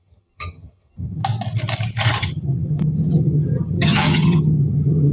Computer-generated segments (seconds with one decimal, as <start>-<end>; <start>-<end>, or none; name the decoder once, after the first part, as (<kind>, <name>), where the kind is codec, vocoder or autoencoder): 0.0-1.2 (vocoder, HiFi-GAN); 2.2-5.1